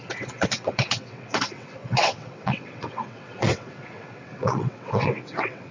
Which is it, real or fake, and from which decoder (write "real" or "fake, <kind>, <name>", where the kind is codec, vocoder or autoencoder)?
fake, vocoder, WaveNeXt